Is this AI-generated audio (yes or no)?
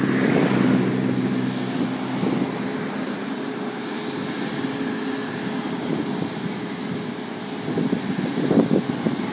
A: no